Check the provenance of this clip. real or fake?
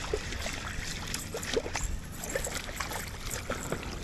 real